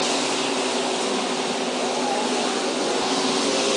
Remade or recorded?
remade